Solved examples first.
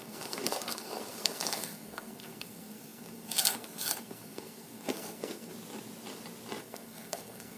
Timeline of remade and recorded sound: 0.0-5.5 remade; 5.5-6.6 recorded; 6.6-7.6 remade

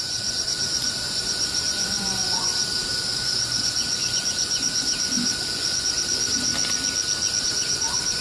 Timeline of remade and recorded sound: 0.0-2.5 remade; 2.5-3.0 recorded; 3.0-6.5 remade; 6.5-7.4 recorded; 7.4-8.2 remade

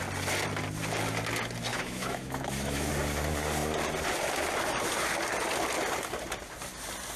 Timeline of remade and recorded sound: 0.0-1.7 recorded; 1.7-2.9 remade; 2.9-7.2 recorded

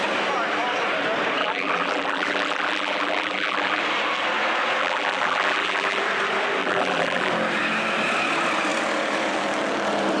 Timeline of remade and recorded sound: 0.0-1.4 recorded; 1.4-3.8 remade; 3.8-4.8 recorded; 4.8-6.0 remade; 6.0-6.6 recorded; 6.6-7.3 remade; 7.3-10.2 recorded

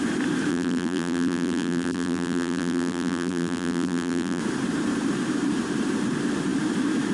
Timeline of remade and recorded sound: 0.0-0.5 recorded; 0.5-4.4 remade; 4.4-7.1 recorded